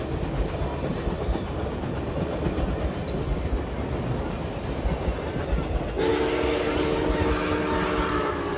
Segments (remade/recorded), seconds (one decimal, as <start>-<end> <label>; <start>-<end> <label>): 0.0-3.0 recorded; 3.0-3.6 remade; 3.6-8.6 recorded